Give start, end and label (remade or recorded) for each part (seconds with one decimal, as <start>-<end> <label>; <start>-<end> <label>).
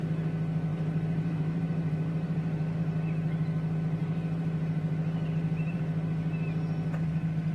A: 0.0-0.7 recorded; 0.7-2.8 remade; 2.8-4.0 recorded; 4.0-5.8 remade; 5.8-7.5 recorded